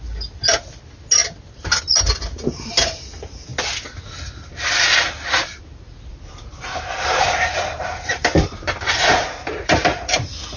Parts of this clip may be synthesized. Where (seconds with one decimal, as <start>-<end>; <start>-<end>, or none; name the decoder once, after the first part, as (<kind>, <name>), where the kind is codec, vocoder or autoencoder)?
6.1-10.2 (vocoder, BigVGAN v2)